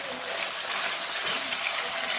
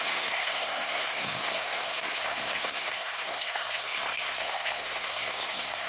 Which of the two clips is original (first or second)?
first